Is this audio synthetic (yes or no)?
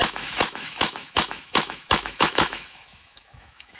yes